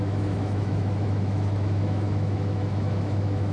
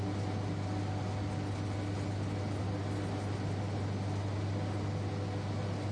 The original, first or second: second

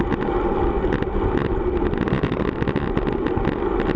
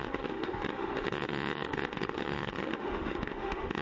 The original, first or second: first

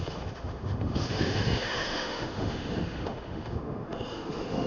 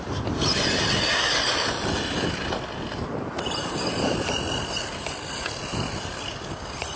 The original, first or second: second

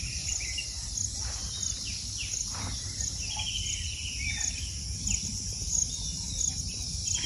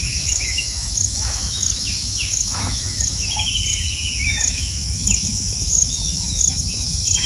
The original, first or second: first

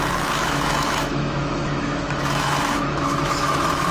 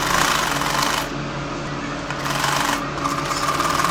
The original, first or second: second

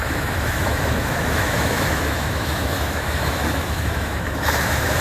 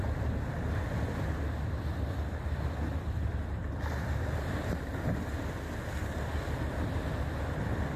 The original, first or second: second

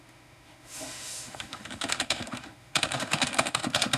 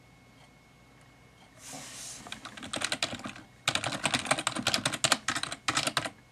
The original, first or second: second